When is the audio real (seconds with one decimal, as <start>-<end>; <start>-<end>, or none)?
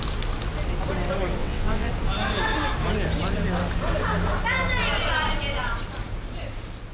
0.0-1.4; 1.9-6.9